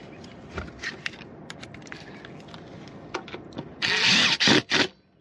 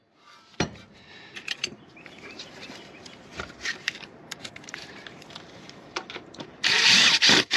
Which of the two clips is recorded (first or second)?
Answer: first